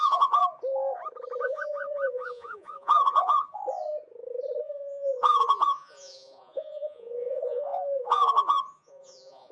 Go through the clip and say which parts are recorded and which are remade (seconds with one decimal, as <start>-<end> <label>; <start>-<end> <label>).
0.0-0.4 remade; 0.4-1.4 recorded; 1.4-3.6 remade; 3.6-4.6 recorded; 4.6-9.5 remade